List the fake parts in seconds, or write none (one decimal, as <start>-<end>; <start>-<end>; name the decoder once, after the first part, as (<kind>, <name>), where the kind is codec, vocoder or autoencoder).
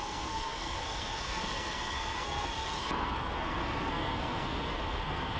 0.0-5.4 (codec, SNAC)